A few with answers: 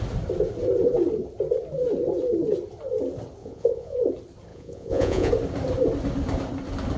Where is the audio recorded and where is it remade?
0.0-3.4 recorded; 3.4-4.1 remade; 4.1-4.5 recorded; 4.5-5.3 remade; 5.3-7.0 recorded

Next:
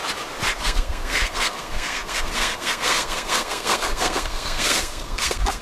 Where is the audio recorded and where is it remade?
0.0-0.6 recorded; 0.6-5.6 remade

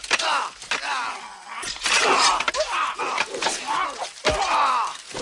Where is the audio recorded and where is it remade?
0.0-0.8 remade; 0.8-1.8 recorded; 1.8-3.8 remade; 3.8-5.2 recorded

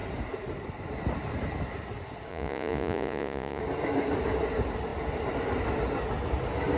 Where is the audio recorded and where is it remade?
0.0-2.3 recorded; 2.3-3.6 remade; 3.6-6.8 recorded

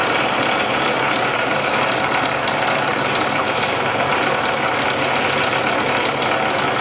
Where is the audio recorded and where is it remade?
0.0-4.1 remade; 4.1-6.8 recorded

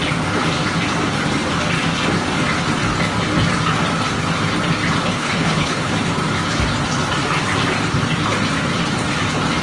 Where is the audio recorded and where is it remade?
0.0-5.1 recorded; 5.1-5.9 remade; 5.9-9.6 recorded

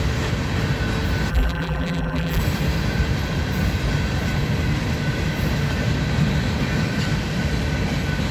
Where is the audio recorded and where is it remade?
0.0-1.3 recorded; 1.3-2.4 remade; 2.4-8.3 recorded